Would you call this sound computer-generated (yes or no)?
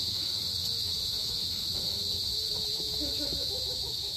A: yes